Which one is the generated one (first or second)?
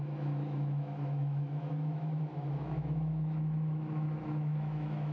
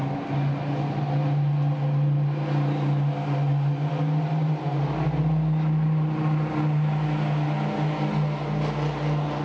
first